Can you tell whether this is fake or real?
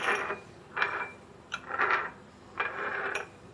fake